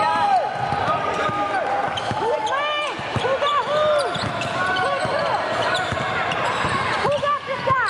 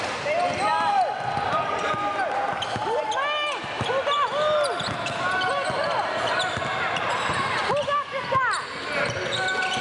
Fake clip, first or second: first